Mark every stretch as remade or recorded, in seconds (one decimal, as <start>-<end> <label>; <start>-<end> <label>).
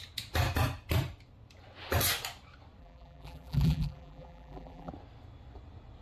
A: 0.0-2.8 recorded; 2.8-4.9 remade; 4.9-6.0 recorded